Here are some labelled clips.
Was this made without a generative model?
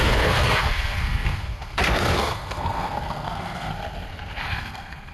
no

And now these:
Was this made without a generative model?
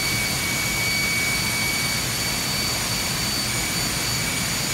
yes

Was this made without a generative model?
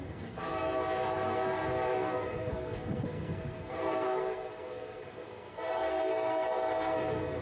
no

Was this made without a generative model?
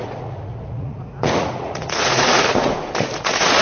no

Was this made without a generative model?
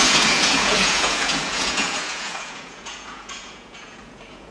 no